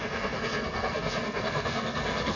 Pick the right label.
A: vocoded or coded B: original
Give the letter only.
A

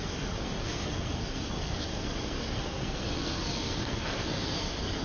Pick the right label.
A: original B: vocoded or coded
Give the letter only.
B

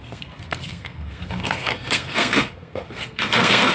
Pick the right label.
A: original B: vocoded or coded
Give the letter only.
B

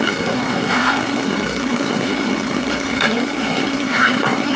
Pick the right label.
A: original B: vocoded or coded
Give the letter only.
B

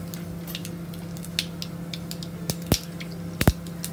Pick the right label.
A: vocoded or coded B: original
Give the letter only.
B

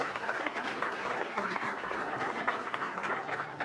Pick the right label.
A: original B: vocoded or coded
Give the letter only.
B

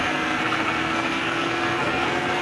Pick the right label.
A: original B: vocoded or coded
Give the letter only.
B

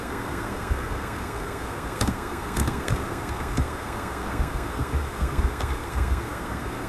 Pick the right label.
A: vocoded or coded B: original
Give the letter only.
A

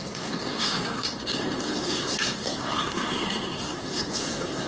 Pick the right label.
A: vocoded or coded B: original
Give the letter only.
A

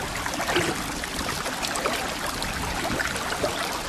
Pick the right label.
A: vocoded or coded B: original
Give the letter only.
B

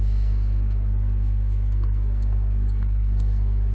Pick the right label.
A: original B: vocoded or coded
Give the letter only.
B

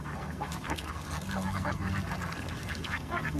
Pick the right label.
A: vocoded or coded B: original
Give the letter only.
A